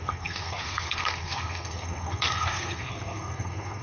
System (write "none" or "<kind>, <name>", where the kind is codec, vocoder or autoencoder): codec, SNAC